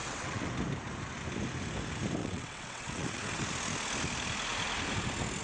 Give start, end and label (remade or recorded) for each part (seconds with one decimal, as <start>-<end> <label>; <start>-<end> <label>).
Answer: 0.0-0.5 remade; 0.5-2.2 recorded; 2.2-3.5 remade; 3.5-5.4 recorded